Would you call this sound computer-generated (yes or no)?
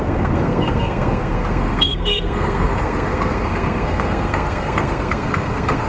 yes